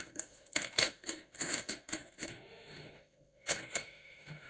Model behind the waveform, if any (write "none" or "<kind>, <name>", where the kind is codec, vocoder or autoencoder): autoencoder, DAC-VAE